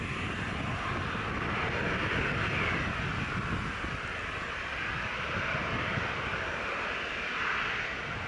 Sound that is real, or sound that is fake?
real